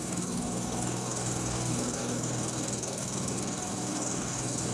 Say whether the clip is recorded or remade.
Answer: remade